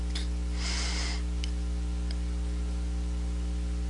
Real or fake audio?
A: real